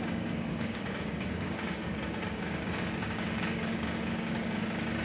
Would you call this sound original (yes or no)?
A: no